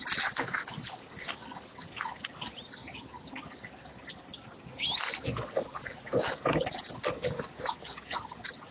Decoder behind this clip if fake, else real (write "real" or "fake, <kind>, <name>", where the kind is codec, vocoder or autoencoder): real